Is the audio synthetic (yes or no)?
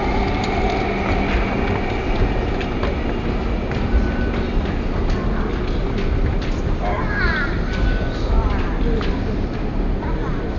no